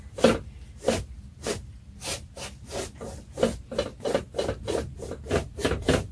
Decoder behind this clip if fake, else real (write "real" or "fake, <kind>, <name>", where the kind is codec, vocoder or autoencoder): real